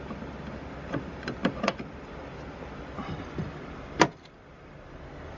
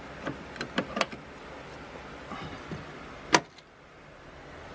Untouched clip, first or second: second